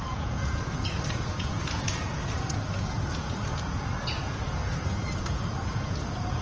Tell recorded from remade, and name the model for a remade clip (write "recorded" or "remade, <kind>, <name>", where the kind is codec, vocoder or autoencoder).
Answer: remade, vocoder, Vocos